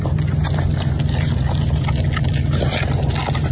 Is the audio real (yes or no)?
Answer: yes